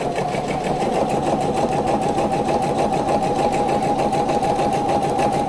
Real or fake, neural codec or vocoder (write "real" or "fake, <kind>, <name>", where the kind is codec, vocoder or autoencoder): real